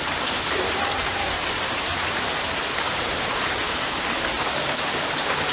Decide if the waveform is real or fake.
fake